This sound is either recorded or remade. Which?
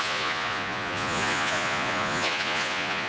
remade